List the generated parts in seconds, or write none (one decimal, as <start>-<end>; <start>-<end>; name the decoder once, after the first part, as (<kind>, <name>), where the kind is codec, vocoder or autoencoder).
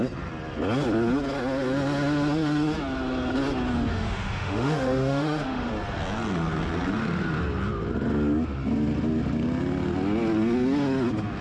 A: 3.9-5.7 (autoencoder, DAC-VAE)